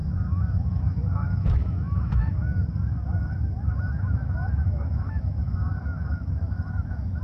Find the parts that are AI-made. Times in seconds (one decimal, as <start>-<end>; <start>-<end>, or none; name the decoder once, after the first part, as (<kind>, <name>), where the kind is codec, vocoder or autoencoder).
0.0-2.4 (autoencoder, DAC-VAE); 3.4-7.2